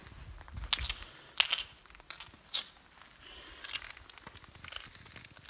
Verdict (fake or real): real